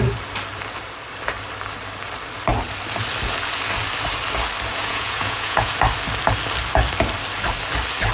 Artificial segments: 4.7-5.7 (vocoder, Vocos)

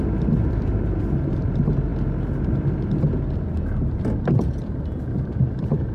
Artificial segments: 0.4-1.0 (vocoder, BigVGAN v2)

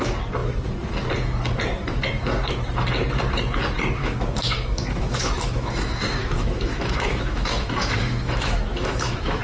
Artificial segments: 4.0-9.4 (autoencoder, DAC-VAE)

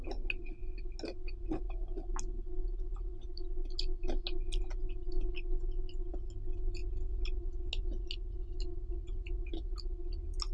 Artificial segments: none

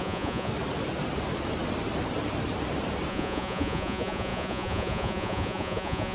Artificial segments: 0.0-0.5 (vocoder, Vocos); 3.1-6.1

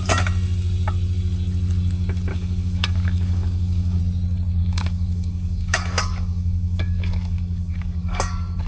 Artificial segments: 2.3-4.0 (codec, DAC); 4.6-8.7

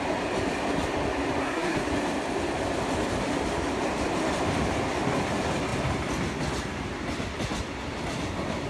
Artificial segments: 1.4-1.9 (codec, SNAC)

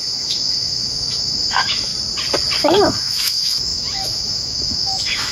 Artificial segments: 0.0-1.9 (autoencoder, DAC-VAE); 2.6-5.3